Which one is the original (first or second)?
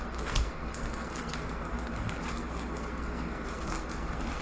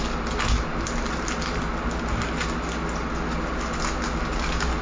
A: second